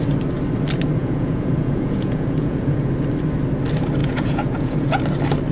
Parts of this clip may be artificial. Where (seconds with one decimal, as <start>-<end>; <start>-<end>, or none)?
1.0-2.9; 4.0-5.0